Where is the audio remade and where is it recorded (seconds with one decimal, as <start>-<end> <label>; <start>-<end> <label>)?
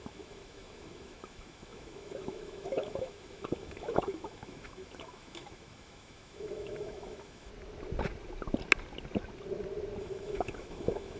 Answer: 0.0-7.5 remade; 7.5-10.0 recorded; 10.0-11.2 remade